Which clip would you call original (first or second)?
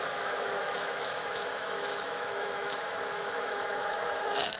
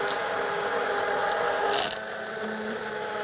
second